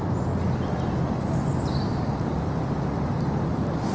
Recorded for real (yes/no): yes